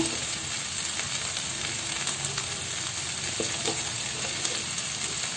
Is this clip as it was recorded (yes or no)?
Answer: yes